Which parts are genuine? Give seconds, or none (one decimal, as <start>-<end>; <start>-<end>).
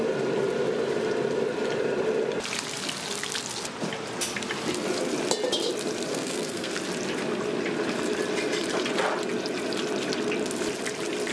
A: 0.0-6.1; 6.7-11.3